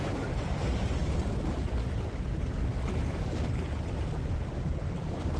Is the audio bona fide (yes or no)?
yes